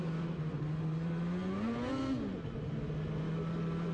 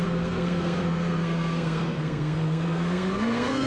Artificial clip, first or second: second